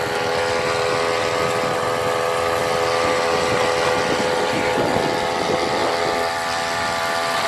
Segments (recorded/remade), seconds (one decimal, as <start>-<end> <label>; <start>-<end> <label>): 0.0-7.5 recorded